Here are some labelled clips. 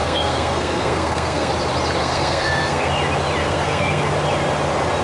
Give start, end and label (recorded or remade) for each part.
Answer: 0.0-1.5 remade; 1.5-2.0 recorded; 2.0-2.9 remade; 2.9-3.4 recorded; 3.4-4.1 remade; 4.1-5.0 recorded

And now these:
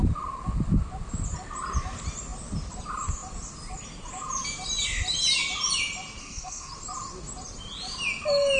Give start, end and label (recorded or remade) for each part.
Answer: 0.0-6.2 recorded; 6.2-6.7 remade; 6.7-8.6 recorded